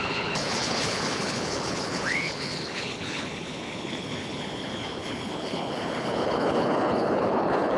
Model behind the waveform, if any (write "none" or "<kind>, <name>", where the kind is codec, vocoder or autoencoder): codec, HILCodec